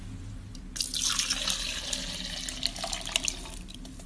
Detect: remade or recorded recorded